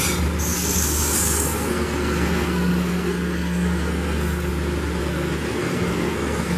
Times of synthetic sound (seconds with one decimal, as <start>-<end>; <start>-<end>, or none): 0.5-4.5; 5.0-6.6